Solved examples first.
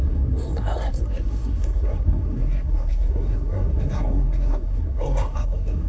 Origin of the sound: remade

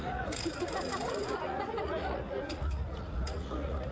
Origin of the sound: remade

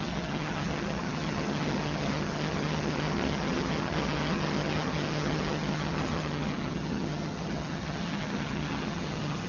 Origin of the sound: remade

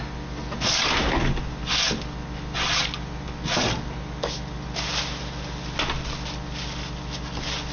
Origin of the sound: recorded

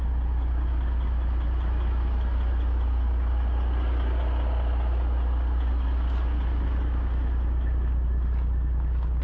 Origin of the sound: recorded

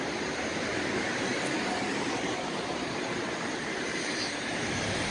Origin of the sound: remade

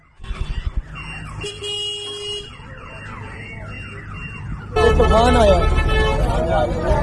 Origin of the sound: recorded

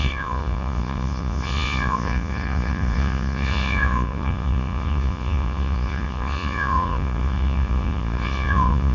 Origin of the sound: remade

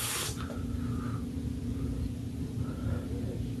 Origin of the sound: recorded